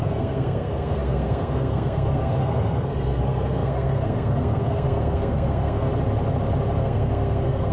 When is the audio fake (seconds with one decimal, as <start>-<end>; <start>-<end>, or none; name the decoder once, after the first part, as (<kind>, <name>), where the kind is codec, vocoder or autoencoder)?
0.0-5.9 (codec, SNAC); 6.8-7.7